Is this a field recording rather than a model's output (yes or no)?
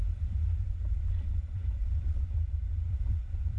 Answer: no